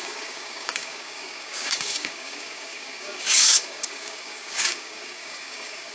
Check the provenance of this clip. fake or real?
fake